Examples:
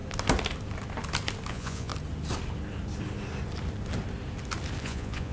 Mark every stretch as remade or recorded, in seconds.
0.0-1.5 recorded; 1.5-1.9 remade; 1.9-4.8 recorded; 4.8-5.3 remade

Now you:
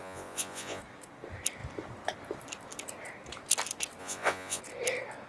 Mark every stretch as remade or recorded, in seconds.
0.0-0.8 remade; 0.8-4.0 recorded; 4.0-4.6 remade; 4.6-5.3 recorded

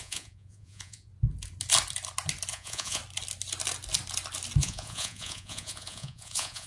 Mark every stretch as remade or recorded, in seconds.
0.0-1.1 remade; 1.1-2.5 recorded; 2.5-3.0 remade; 3.0-4.6 recorded; 4.6-6.7 remade

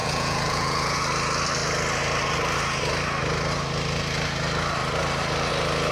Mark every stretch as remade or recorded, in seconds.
0.0-1.0 remade; 1.0-5.9 recorded

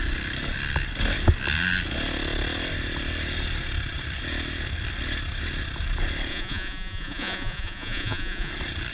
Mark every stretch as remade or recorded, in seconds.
0.0-6.3 recorded; 6.3-8.5 remade; 8.5-8.9 recorded

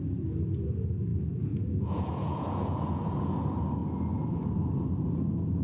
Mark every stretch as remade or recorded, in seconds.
0.0-1.1 recorded; 1.1-3.4 remade; 3.4-5.6 recorded

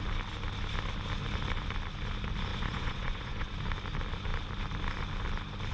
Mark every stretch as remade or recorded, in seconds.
0.0-2.5 recorded; 2.5-3.5 remade; 3.5-5.7 recorded

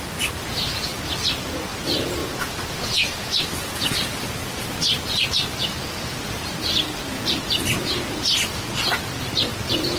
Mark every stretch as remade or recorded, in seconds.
0.0-2.2 recorded; 2.2-3.9 remade; 3.9-10.0 recorded